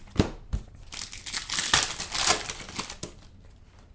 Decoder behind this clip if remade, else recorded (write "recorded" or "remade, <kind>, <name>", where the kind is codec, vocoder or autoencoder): recorded